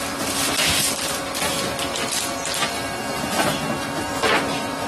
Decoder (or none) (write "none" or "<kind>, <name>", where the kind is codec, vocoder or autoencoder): none